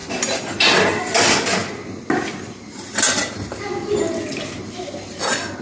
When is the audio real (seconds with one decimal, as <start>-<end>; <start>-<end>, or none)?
0.0-5.6